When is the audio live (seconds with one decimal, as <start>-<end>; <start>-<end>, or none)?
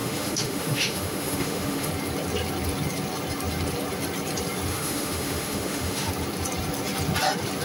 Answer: 1.9-4.7; 6.1-7.6